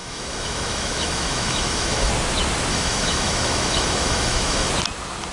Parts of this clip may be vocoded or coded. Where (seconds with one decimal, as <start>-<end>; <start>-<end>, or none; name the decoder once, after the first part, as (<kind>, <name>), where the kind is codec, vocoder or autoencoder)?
0.0-2.1 (autoencoder, DAC-VAE); 2.7-4.7